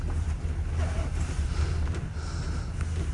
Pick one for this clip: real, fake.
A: real